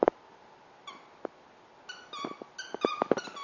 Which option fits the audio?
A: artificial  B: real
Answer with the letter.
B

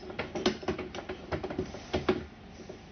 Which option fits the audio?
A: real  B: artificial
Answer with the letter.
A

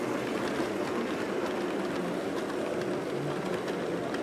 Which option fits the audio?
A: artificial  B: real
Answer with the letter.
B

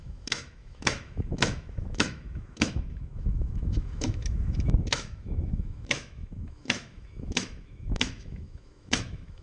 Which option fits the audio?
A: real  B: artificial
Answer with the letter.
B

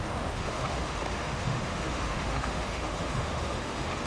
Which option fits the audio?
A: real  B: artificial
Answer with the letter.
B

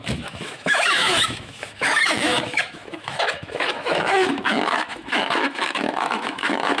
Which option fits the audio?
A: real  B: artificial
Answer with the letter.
B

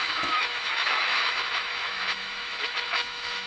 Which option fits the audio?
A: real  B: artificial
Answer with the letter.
B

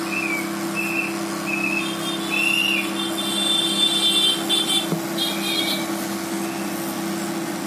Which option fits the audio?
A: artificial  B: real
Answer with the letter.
B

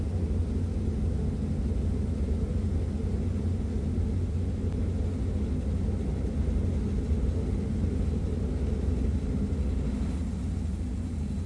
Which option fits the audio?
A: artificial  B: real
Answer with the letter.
B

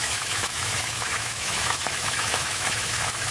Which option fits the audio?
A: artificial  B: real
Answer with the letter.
A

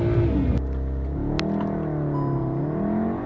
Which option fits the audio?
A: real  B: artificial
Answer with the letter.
A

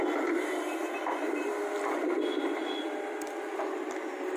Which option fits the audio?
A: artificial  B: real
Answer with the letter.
B